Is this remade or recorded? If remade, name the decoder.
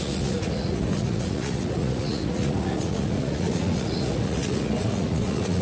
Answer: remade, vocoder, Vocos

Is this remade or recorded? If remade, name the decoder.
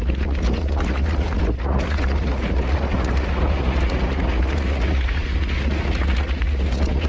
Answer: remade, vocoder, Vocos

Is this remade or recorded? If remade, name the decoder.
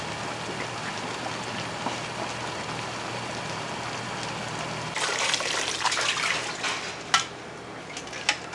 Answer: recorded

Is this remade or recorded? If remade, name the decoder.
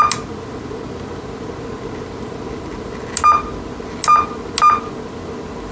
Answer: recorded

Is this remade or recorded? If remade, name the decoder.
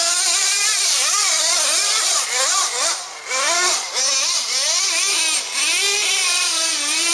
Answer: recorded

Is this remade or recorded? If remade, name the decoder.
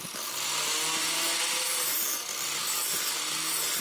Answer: recorded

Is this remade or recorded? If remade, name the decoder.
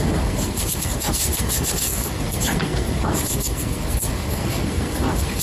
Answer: remade, codec, SNAC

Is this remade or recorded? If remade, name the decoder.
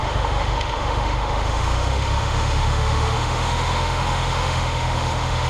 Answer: remade, autoencoder, DAC-VAE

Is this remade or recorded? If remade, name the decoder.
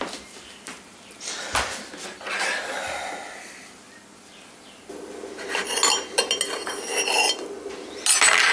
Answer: recorded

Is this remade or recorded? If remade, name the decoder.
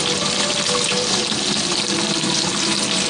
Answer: remade, vocoder, BigVGAN v2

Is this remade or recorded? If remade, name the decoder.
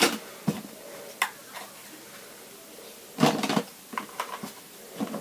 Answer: recorded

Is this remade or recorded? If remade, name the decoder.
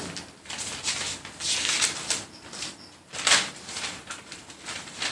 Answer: remade, vocoder, BigVGAN v2